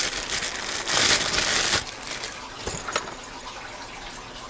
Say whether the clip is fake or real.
real